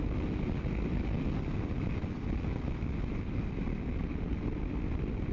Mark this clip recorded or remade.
recorded